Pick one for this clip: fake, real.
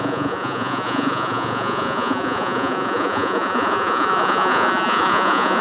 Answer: fake